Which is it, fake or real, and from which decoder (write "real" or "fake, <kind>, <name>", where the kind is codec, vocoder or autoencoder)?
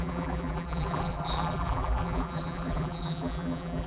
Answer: fake, vocoder, BigVGAN v2